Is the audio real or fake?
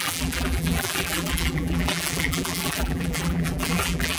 fake